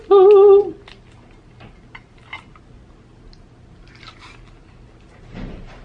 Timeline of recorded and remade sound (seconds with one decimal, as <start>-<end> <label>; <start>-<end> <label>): 0.0-5.8 recorded